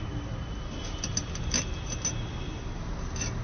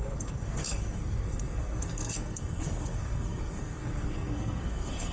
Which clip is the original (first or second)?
first